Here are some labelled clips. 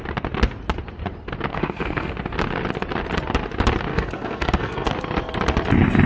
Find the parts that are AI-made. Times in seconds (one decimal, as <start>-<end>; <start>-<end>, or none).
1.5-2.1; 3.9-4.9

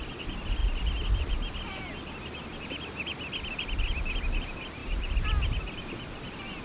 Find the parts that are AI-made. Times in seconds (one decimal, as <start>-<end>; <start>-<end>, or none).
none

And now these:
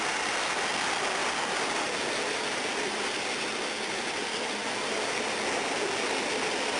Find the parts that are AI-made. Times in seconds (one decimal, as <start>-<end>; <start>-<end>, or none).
none

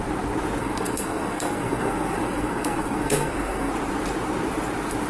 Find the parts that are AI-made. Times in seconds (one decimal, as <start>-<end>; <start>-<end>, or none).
0.6-3.7

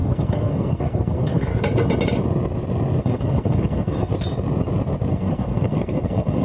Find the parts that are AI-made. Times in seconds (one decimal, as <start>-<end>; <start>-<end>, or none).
0.0-1.5; 3.0-4.1; 5.1-6.4

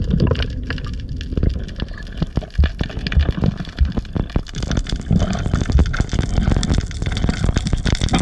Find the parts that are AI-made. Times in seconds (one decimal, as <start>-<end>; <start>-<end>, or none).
none